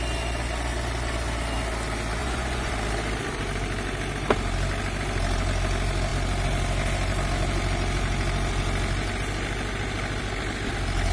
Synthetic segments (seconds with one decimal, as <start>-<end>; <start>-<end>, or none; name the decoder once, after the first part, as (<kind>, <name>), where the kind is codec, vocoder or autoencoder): 2.2-2.7 (vocoder, Vocos)

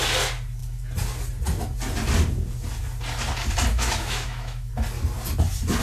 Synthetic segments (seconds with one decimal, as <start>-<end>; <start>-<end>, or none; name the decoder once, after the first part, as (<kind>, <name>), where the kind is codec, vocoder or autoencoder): 3.7-4.7 (autoencoder, DAC-VAE)

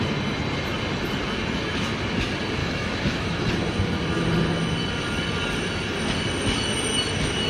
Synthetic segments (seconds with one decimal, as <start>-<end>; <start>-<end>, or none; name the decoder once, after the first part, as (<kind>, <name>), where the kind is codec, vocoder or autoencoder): 2.6-3.5 (autoencoder, DAC-VAE)

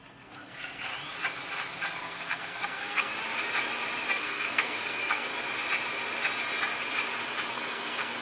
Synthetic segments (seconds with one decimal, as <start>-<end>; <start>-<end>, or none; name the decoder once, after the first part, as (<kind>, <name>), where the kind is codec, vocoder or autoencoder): 0.0-0.9 (codec, SNAC); 2.0-3.1; 4.1-5.3; 7.5-8.2

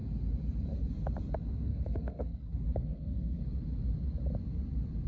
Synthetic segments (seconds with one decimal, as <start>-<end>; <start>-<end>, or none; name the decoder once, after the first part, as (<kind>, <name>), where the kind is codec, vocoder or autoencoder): 1.7-2.4 (codec, SNAC); 2.8-3.4

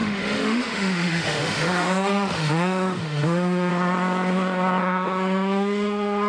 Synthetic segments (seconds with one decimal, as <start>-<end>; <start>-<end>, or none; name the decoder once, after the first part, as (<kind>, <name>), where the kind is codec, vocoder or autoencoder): 0.0-3.7 (autoencoder, DAC-VAE); 4.8-6.3

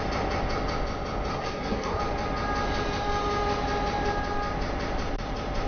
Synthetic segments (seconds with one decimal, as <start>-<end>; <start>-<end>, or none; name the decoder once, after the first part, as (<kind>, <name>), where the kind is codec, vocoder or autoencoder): 1.3-2.0 (codec, SNAC)